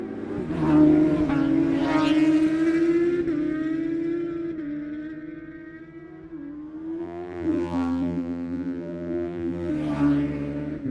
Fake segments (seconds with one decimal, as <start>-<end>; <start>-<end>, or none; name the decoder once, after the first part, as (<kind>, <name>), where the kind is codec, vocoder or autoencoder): 7.0-9.7 (vocoder, BigVGAN v2)